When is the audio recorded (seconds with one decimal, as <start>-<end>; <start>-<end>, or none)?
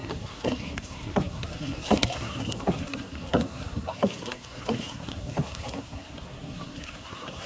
none